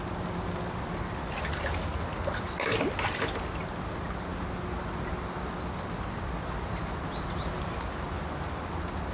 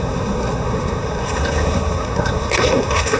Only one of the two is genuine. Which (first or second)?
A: first